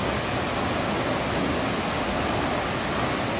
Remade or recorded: recorded